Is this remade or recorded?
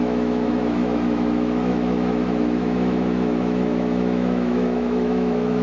remade